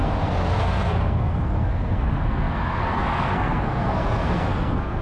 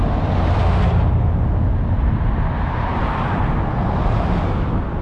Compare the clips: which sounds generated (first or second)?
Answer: first